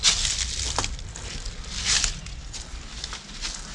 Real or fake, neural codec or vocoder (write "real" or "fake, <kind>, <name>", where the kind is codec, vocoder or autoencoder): real